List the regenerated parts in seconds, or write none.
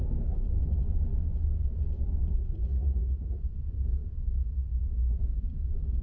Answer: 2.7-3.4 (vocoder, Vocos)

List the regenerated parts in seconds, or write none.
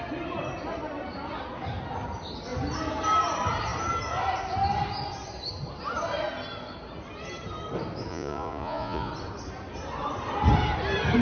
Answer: 8.1-9.1 (vocoder, Vocos)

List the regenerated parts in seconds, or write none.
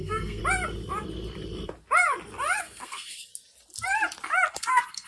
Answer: 0.0-0.4 (codec, SNAC); 2.6-3.3; 4.5-5.1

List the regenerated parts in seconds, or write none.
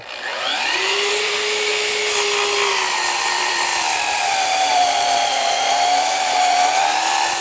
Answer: 0.0-1.7 (vocoder, BigVGAN v2); 3.2-7.4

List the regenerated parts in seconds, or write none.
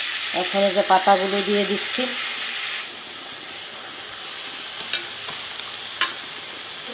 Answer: none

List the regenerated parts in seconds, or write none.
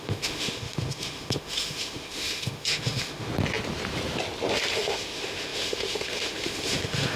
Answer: 0.0-3.3 (autoencoder, DAC-VAE); 4.5-7.2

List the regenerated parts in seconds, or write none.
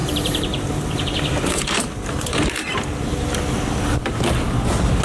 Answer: 0.0-2.7 (vocoder, BigVGAN v2)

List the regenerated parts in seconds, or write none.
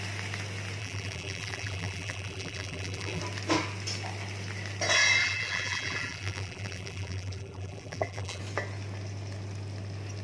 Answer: 0.8-3.2 (vocoder, BigVGAN v2); 5.2-8.4